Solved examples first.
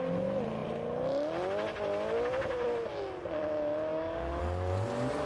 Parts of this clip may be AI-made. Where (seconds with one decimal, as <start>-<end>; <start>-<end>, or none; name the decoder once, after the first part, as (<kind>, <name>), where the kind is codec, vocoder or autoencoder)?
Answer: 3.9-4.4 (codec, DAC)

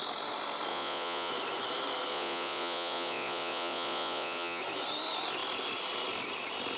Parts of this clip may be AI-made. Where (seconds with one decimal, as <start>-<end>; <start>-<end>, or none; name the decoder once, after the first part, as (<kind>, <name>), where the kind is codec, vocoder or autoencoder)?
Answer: 0.7-1.3 (vocoder, Vocos); 2.1-4.6

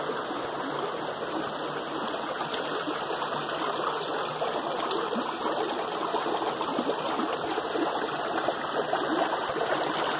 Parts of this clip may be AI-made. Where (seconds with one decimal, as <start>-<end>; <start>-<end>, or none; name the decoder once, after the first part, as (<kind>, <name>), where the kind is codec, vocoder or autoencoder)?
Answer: none

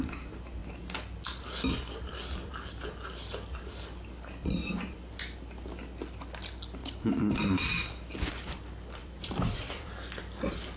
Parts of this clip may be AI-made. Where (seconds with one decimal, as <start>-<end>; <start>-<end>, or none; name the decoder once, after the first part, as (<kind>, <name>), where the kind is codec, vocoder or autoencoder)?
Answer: 6.8-8.3 (vocoder, BigVGAN v2); 9.0-10.2